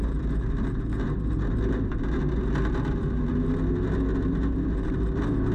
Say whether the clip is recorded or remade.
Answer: recorded